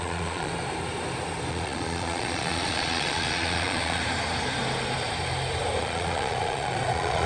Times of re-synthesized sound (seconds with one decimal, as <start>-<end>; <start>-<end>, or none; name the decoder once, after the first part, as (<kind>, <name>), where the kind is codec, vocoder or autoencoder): 0.0-0.5 (vocoder, Vocos); 1.5-4.0; 5.8-7.3